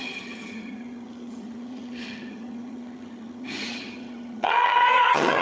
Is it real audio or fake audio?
fake